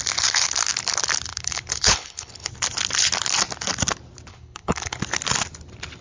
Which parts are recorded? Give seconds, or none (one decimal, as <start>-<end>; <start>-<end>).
0.0-1.3; 2.5-4.3; 5.0-6.0